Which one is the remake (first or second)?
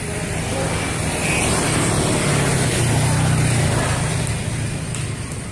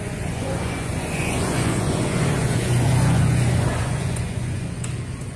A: second